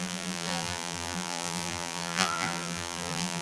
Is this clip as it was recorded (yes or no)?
no